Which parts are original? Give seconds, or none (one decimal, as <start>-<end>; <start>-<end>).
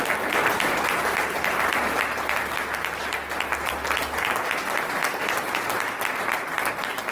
0.0-4.0; 6.0-7.1